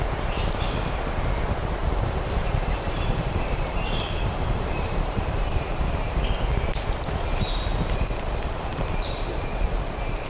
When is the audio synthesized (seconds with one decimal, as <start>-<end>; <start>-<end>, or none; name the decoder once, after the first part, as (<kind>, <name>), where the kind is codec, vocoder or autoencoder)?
1.8-6.2 (vocoder, BigVGAN v2); 7.7-10.3